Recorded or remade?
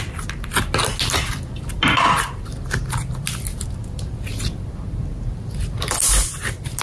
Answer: recorded